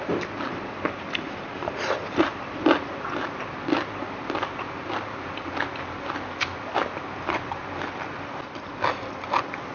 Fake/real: real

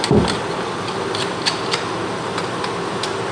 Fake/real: fake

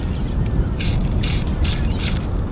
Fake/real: real